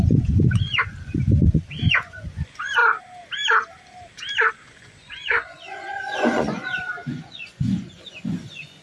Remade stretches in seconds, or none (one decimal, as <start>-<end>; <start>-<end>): 0.0-2.8; 4.5-8.8